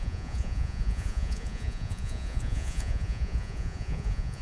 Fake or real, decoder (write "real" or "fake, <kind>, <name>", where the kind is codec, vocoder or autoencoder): fake, vocoder, Vocos